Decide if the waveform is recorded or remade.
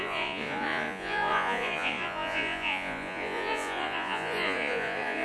remade